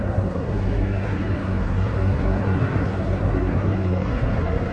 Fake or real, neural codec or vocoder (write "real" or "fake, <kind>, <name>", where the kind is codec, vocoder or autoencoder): fake, codec, SNAC